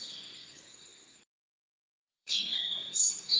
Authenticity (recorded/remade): remade